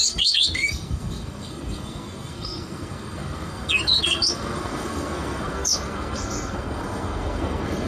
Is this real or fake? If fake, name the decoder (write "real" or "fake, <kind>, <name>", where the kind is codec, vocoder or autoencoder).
fake, codec, SNAC